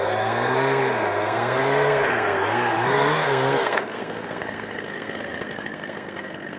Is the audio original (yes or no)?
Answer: no